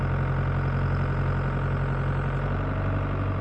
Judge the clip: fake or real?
real